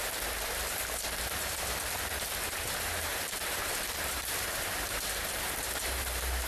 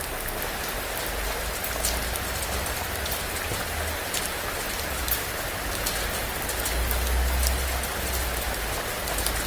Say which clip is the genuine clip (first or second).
second